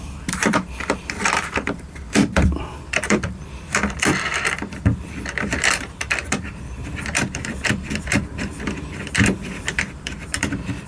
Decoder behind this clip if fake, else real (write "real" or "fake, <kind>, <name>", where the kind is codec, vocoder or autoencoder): fake, vocoder, BigVGAN v2